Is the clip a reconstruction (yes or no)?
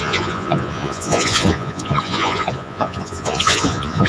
yes